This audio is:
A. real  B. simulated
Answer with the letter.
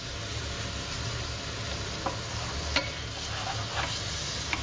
A